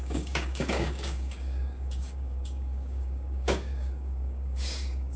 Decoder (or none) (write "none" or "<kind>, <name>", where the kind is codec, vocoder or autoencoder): codec, DAC